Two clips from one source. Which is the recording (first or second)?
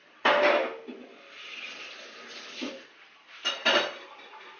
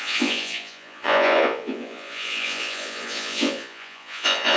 first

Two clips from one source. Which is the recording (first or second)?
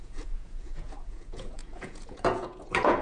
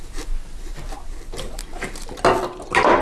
second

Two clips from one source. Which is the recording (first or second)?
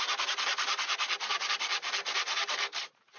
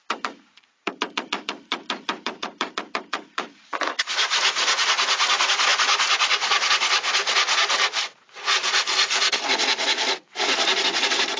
first